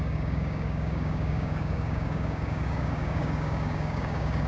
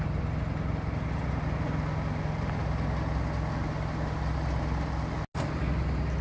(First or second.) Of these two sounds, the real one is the second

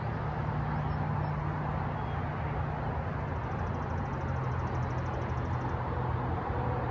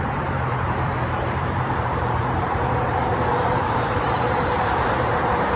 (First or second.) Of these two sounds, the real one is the first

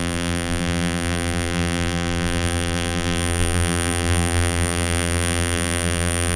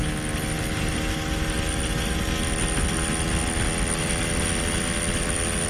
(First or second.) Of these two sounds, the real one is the second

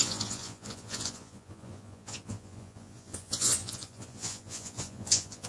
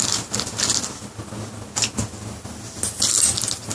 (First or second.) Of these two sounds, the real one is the second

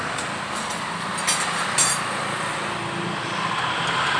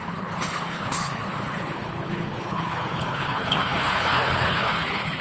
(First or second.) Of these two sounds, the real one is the first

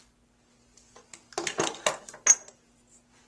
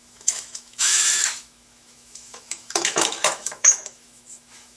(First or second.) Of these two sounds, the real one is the first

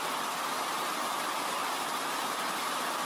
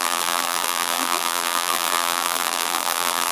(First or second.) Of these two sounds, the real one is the first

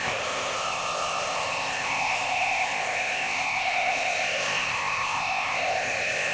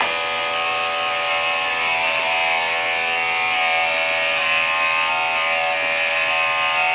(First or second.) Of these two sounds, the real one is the second